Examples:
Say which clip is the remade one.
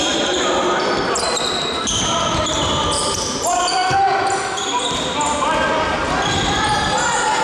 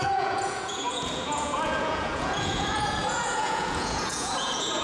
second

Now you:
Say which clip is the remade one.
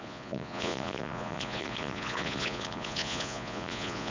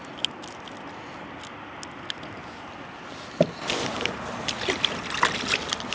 first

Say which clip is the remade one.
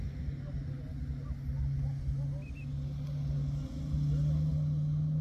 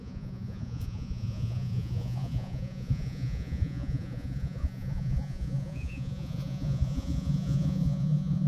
second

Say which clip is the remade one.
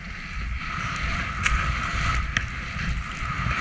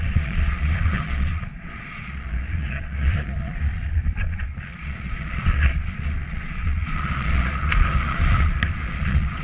second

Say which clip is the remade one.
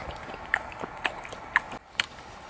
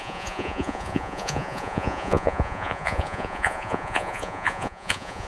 second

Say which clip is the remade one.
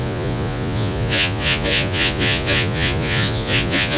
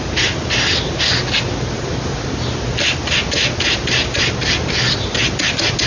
first